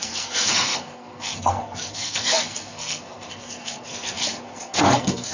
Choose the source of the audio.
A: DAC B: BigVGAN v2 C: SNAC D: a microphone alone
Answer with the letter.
C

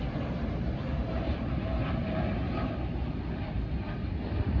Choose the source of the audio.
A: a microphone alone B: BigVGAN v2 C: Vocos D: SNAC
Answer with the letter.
B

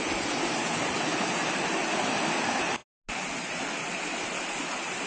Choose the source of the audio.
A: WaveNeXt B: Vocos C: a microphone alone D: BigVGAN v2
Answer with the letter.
C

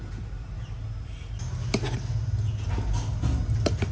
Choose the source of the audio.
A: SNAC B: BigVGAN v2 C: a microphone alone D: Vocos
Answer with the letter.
C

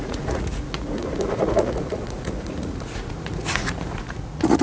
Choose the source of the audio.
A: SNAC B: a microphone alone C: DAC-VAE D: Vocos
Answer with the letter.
D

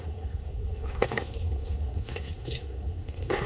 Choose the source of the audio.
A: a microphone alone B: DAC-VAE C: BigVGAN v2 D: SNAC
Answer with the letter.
D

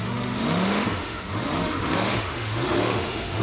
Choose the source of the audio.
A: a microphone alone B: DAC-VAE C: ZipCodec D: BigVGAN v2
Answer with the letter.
B